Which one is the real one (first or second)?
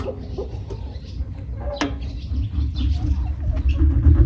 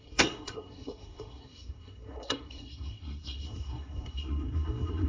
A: first